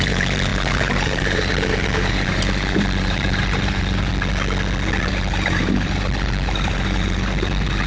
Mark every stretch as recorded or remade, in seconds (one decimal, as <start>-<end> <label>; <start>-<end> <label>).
0.0-4.1 remade; 4.1-5.1 recorded; 5.1-7.9 remade